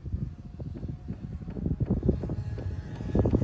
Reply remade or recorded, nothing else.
recorded